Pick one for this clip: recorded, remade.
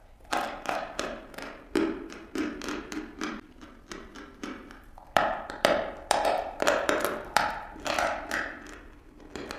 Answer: remade